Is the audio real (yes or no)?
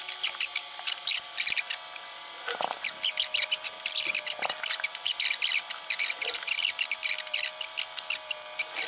yes